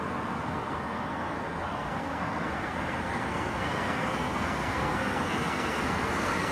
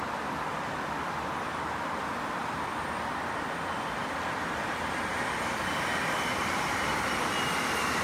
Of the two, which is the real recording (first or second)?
second